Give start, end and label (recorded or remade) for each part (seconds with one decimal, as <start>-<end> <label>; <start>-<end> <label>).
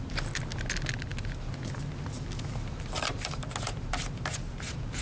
0.0-5.0 recorded